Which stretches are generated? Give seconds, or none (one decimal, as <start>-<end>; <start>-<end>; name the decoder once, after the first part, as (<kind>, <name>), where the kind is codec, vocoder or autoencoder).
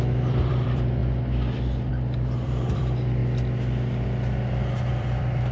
0.0-1.0 (vocoder, BigVGAN v2); 1.9-3.2; 4.9-5.5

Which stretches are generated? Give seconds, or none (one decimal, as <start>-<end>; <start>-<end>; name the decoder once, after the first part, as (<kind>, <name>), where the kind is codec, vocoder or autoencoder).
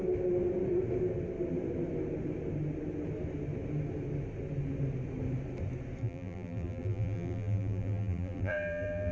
6.0-9.1 (vocoder, BigVGAN v2)